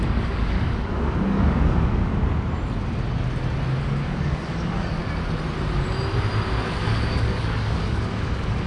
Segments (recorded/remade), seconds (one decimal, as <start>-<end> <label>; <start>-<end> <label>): 0.0-2.1 remade; 2.1-3.8 recorded; 3.8-5.0 remade; 5.0-6.8 recorded; 6.8-8.7 remade